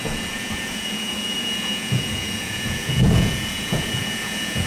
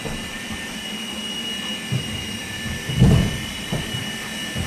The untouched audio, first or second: second